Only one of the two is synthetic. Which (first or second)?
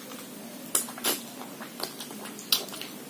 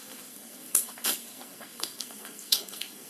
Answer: second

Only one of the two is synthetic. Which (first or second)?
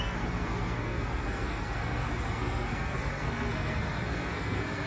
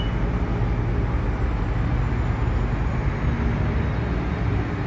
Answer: first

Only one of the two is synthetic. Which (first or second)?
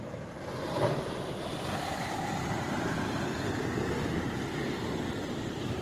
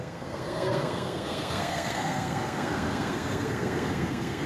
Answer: second